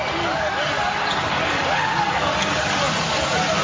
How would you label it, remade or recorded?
recorded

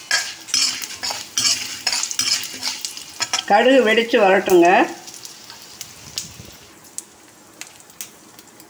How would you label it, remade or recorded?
recorded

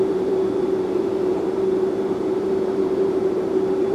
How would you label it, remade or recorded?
remade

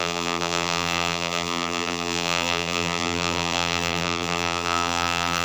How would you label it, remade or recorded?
remade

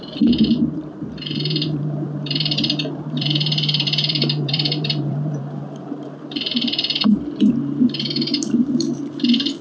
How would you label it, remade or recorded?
remade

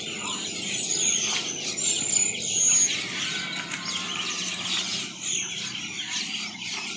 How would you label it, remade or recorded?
recorded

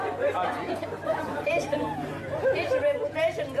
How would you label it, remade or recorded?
recorded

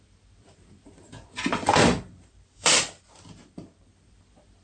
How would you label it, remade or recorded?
remade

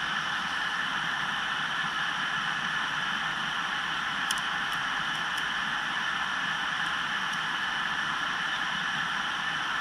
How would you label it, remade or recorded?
recorded